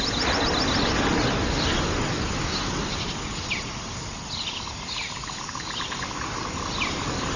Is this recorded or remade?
recorded